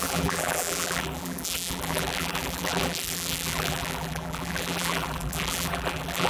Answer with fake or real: fake